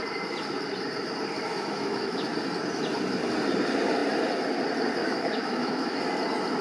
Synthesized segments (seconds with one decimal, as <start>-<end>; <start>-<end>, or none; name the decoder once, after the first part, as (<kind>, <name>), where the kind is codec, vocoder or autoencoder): 1.5-2.3 (autoencoder, DAC-VAE); 5.0-6.0